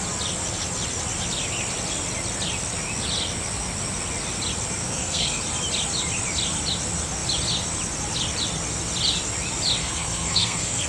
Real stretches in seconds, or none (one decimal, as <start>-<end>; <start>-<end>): 0.0-4.8; 5.4-9.8